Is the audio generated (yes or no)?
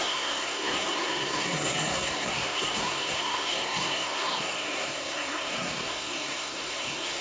yes